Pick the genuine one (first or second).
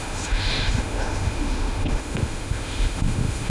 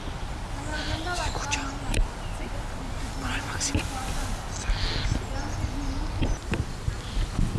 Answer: second